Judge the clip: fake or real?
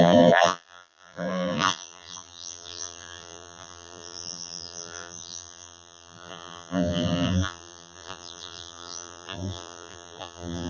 fake